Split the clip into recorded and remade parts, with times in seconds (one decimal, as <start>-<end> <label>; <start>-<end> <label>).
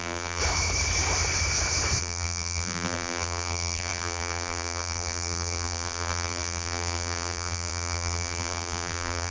0.0-0.4 remade; 0.4-2.0 recorded; 2.0-9.3 remade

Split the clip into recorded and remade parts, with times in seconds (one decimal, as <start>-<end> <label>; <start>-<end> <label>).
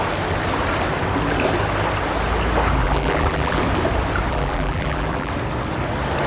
0.0-2.8 recorded; 2.8-3.6 remade; 3.6-4.3 recorded; 4.3-5.3 remade; 5.3-6.3 recorded